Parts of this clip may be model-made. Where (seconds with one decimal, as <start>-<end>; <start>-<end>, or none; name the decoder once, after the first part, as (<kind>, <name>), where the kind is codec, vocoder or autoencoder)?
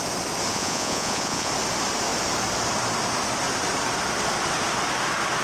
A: 0.5-1.5 (vocoder, Vocos)